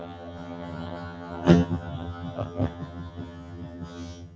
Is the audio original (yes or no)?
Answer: no